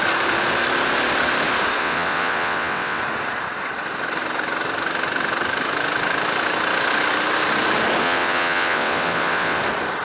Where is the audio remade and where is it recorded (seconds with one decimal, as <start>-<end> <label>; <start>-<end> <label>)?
0.0-1.8 recorded; 1.8-3.0 remade; 3.0-8.0 recorded; 8.0-9.6 remade; 9.6-10.0 recorded